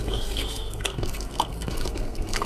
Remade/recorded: remade